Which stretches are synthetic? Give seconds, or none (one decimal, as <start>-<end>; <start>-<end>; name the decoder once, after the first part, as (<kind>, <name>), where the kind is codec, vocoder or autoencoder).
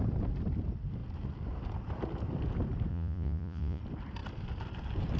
2.9-3.8 (vocoder, Vocos)